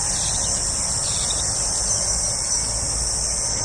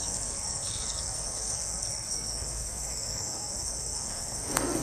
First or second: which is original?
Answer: first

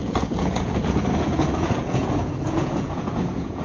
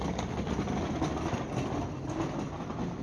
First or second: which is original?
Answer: second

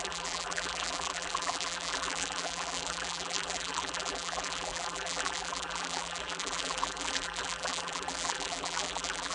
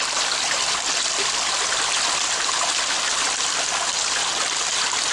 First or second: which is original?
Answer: second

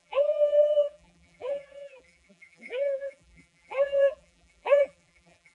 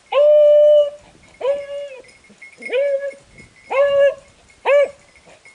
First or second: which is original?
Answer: second